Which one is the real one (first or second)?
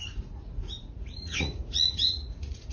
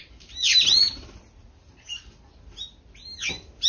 second